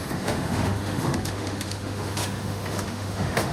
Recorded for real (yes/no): no